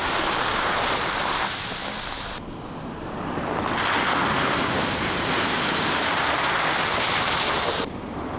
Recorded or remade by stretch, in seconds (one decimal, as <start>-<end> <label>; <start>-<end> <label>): 0.0-1.8 remade; 1.8-6.8 recorded; 6.8-8.4 remade